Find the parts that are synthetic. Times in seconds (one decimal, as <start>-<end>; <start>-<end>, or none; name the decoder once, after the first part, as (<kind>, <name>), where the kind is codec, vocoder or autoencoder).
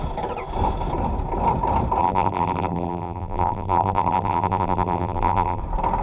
2.0-5.6 (vocoder, BigVGAN v2)